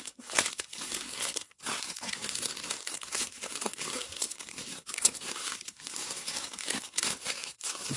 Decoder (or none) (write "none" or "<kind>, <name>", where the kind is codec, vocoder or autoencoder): codec, SNAC